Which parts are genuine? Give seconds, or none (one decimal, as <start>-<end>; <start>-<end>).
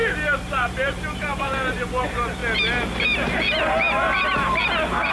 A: 2.4-5.1